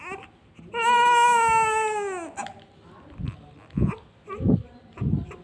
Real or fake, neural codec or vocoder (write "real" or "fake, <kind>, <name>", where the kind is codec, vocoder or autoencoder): real